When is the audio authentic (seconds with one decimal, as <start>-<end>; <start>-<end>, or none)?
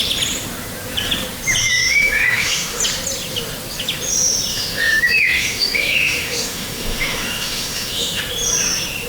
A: 0.0-1.6; 2.8-4.5; 8.2-9.1